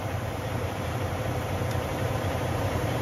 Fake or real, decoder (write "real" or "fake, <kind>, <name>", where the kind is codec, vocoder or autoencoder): fake, vocoder, BigVGAN v2